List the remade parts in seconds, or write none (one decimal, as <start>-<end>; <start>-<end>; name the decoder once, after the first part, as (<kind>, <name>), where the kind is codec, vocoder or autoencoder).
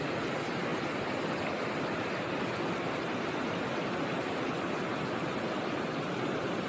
0.0-0.7 (vocoder, BigVGAN v2); 4.3-6.7